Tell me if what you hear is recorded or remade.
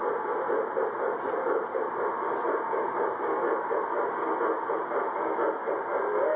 recorded